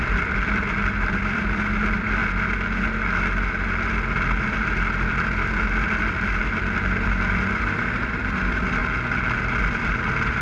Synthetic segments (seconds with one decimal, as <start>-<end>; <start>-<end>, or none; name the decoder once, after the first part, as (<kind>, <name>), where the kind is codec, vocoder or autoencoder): 0.0-2.2 (vocoder, BigVGAN v2); 6.4-8.8; 9.6-10.4